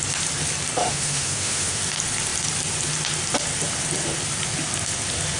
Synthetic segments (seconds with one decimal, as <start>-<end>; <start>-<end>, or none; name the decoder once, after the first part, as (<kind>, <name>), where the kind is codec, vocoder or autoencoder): 0.8-1.8 (autoencoder, DAC-VAE)